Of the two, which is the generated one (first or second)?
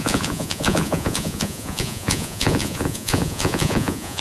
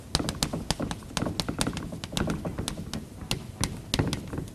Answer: first